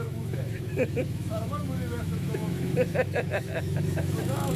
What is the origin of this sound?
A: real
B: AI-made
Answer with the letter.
B